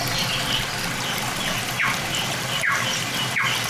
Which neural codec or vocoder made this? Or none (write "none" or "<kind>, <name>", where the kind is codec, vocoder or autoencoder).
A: none